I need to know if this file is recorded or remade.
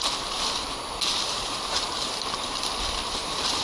recorded